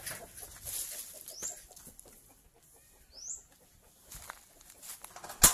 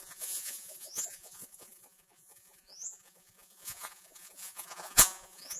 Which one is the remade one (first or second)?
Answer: second